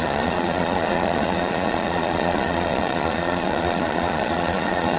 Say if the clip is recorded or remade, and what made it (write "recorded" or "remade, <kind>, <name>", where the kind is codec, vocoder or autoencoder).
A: remade, vocoder, Vocos